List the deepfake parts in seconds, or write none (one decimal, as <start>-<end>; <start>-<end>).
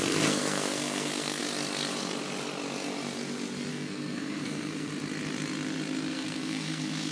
0.0-1.4; 3.7-4.9; 6.1-7.1